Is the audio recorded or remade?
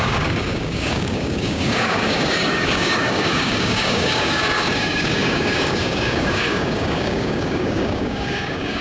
remade